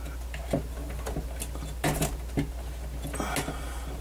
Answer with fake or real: real